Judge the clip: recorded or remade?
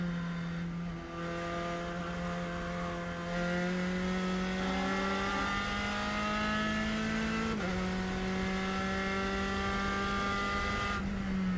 recorded